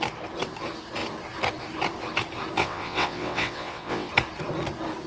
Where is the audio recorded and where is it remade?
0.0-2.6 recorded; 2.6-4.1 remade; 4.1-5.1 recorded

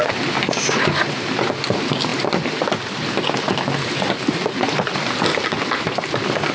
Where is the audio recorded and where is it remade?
0.0-6.5 recorded

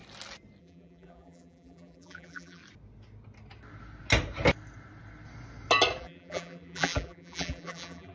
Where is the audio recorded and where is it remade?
0.0-0.6 recorded; 0.6-2.6 remade; 2.6-6.0 recorded; 6.0-8.1 remade

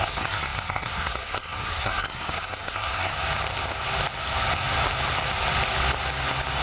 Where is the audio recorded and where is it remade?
0.0-3.1 remade; 3.1-6.6 recorded

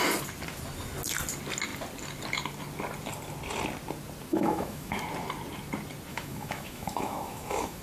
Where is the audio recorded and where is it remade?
0.0-4.3 recorded; 4.3-5.0 remade; 5.0-6.1 recorded; 6.1-7.8 remade

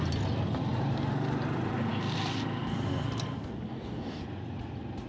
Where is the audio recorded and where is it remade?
0.0-3.7 recorded; 3.7-4.2 remade; 4.2-5.1 recorded